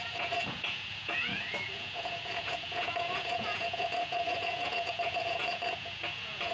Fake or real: fake